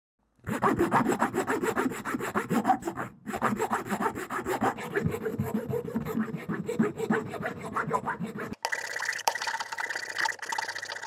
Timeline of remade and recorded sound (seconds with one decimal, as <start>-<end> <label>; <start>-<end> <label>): 0.0-5.3 recorded; 5.3-8.3 remade; 8.3-9.1 recorded; 9.1-9.8 remade; 9.8-11.1 recorded